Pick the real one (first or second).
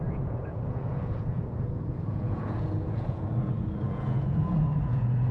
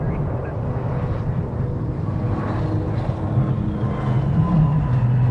second